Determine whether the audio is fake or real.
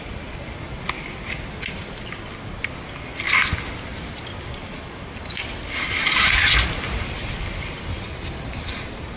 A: real